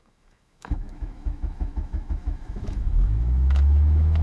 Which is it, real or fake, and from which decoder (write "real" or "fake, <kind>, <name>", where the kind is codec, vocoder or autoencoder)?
fake, autoencoder, DAC-VAE